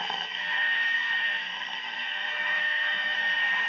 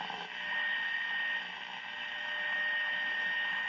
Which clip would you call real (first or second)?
second